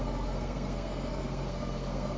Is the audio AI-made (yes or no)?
yes